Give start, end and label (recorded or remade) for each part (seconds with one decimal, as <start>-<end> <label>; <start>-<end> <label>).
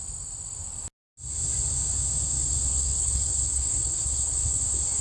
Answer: 0.0-2.7 recorded; 2.7-4.6 remade; 4.6-5.0 recorded